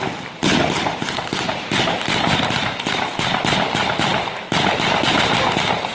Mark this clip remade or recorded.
recorded